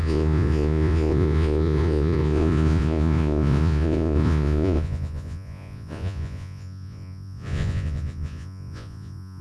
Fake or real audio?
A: fake